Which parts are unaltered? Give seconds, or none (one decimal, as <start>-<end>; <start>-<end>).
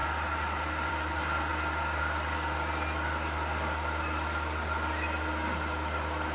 0.0-6.3